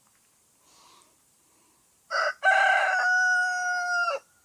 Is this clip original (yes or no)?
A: no